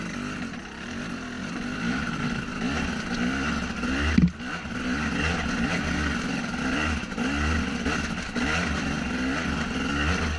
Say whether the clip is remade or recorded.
recorded